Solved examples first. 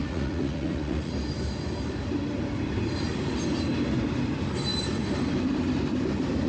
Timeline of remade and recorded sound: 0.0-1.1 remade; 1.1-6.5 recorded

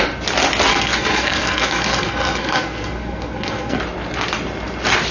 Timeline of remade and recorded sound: 0.0-0.7 recorded; 0.7-3.8 remade; 3.8-5.1 recorded

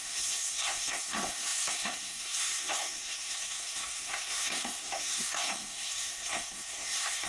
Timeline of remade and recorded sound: 0.0-7.3 remade

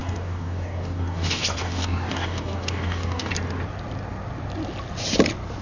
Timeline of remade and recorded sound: 0.0-3.3 remade; 3.3-5.6 recorded

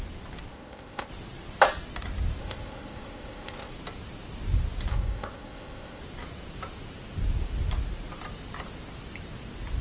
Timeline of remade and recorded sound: 0.0-0.5 recorded; 0.5-1.1 remade; 1.1-2.4 recorded; 2.4-3.7 remade; 3.7-4.9 recorded; 4.9-6.0 remade; 6.0-9.8 recorded

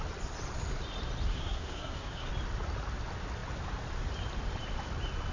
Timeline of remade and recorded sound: 0.0-1.3 recorded; 1.3-2.3 remade; 2.3-5.3 recorded

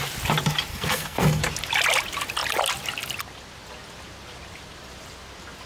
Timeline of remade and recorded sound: 0.0-0.7 recorded; 0.7-1.4 remade; 1.4-5.7 recorded

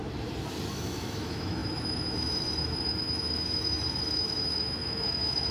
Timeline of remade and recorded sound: 0.0-0.7 recorded; 0.7-5.5 remade